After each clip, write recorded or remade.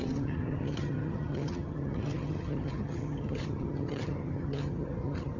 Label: remade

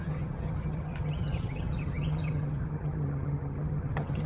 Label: remade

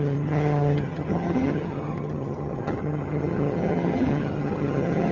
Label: remade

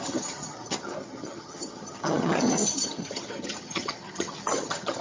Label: remade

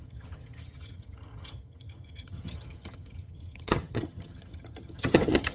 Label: remade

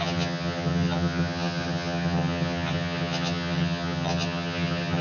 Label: remade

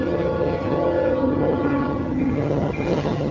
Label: remade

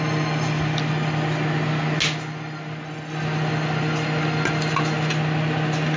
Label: recorded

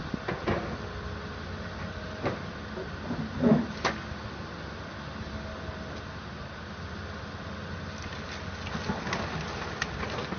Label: recorded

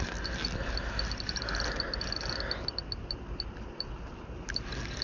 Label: recorded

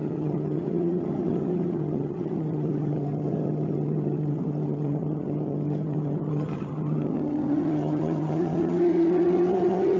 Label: remade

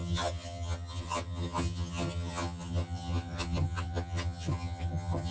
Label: remade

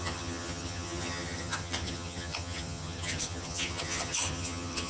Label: remade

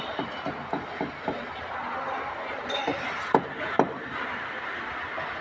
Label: recorded